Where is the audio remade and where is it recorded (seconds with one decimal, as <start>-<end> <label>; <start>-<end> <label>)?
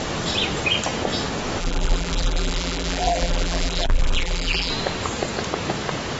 0.0-1.6 recorded; 1.6-4.7 remade; 4.7-6.2 recorded